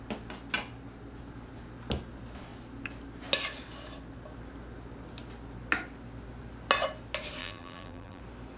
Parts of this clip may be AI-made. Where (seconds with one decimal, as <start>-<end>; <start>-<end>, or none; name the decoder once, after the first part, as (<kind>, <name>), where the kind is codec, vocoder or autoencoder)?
7.4-8.2 (vocoder, BigVGAN v2)